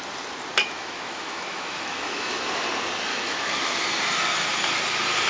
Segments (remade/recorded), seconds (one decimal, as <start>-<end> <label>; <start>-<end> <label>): 0.0-0.6 recorded; 0.6-2.5 remade; 2.5-3.1 recorded; 3.1-3.8 remade; 3.8-5.3 recorded